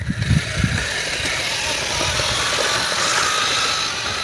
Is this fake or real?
real